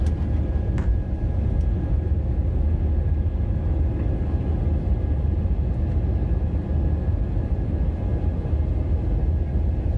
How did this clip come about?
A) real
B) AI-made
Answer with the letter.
A